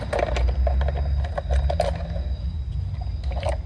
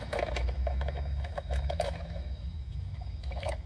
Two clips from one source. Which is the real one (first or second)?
first